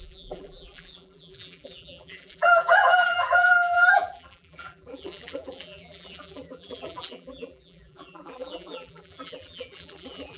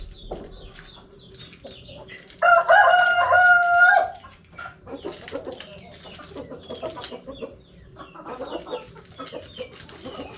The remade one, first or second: first